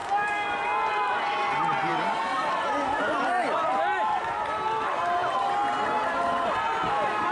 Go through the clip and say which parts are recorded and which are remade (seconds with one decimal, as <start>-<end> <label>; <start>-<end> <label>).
0.0-7.3 recorded